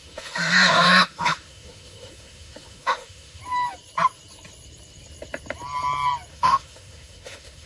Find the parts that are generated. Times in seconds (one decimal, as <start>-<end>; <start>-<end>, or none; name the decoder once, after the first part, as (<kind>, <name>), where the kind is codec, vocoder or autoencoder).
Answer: 0.0-3.4 (autoencoder, DAC-VAE); 6.3-7.7